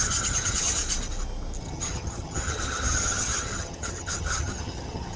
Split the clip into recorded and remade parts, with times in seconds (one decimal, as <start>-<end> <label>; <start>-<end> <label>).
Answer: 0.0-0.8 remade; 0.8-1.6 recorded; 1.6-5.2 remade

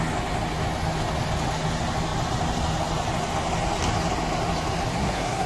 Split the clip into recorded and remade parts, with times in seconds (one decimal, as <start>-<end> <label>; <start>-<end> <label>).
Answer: 0.0-4.9 recorded; 4.9-5.5 remade

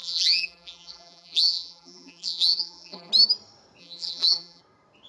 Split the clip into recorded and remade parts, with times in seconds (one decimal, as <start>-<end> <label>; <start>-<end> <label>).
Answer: 0.0-3.1 remade; 3.1-3.8 recorded; 3.8-4.6 remade; 4.6-5.1 recorded